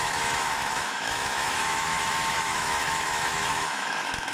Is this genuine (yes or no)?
no